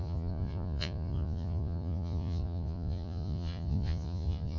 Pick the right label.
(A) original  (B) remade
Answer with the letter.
B